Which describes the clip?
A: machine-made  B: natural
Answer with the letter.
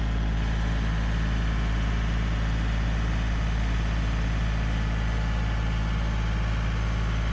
B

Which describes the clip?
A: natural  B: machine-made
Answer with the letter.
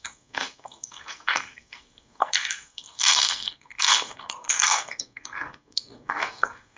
B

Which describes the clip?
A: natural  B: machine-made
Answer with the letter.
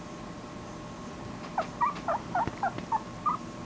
A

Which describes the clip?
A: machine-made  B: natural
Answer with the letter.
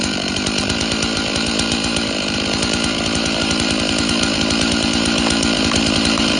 A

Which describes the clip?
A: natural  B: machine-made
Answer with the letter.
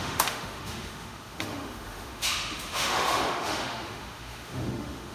B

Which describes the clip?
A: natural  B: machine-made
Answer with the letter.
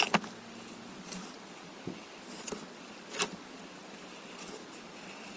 A